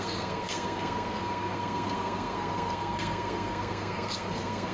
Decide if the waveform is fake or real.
fake